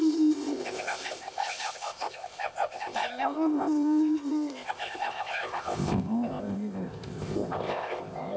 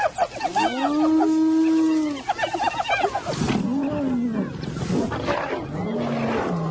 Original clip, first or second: second